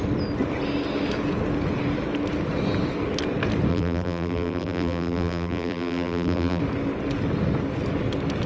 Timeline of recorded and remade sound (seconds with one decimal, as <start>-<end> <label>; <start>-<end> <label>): 0.0-3.7 recorded; 3.7-6.6 remade; 6.6-8.5 recorded